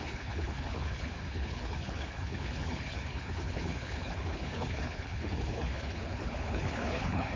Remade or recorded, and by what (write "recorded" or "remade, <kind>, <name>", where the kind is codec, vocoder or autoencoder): remade, codec, HILCodec